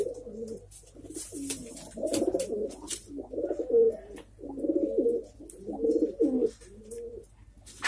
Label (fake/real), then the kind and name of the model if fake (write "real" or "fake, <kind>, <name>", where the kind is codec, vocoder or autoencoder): real